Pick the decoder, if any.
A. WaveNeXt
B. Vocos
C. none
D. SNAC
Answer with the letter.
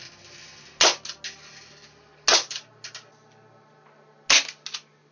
C